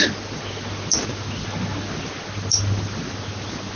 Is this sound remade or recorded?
recorded